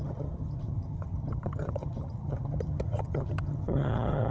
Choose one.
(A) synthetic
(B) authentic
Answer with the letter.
A